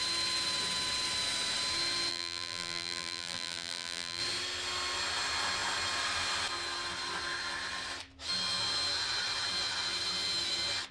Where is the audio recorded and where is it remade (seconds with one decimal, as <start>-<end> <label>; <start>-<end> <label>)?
0.0-2.1 recorded; 2.1-4.2 remade; 4.2-10.9 recorded

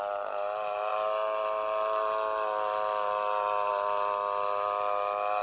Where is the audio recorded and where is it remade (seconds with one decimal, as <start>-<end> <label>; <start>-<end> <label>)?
0.0-5.4 recorded

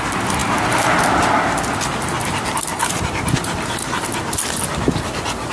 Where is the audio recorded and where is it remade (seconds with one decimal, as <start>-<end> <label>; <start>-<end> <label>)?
0.0-0.4 recorded; 0.4-1.0 remade; 1.0-2.7 recorded; 2.7-3.4 remade; 3.4-5.5 recorded